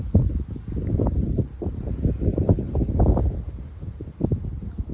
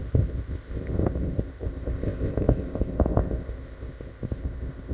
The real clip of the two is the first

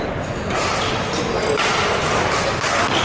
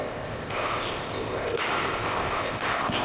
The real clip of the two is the first